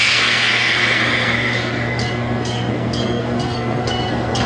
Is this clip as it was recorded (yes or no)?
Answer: no